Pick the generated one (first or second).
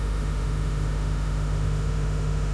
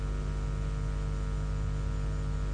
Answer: first